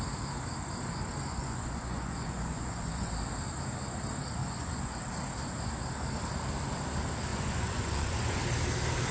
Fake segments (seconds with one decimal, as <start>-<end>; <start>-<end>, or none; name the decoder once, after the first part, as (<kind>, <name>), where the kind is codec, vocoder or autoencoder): 1.3-3.1 (vocoder, Vocos); 4.4-5.0; 7.3-8.4